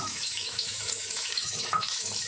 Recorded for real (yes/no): no